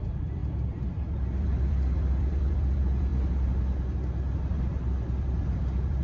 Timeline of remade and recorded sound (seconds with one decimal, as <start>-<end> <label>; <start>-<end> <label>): 0.0-3.1 remade; 3.1-5.2 recorded; 5.2-6.0 remade